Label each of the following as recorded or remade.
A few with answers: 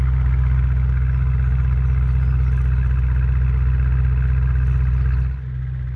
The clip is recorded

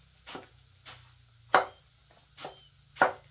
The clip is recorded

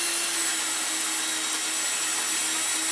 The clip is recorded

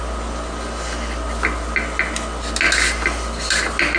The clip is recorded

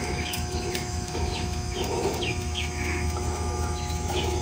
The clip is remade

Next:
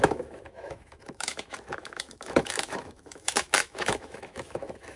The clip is remade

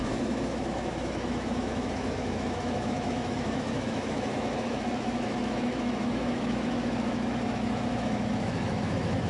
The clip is remade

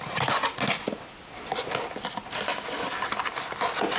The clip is recorded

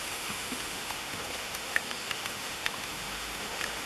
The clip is remade